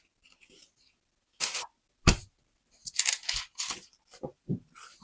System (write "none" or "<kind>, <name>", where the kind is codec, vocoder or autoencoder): none